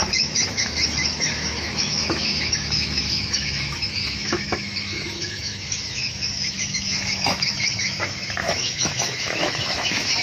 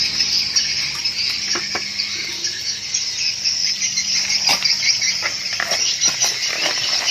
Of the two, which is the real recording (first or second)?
second